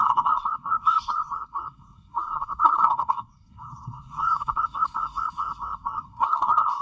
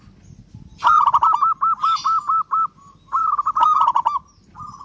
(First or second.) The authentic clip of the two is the second